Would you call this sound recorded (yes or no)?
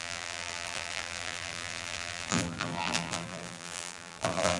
no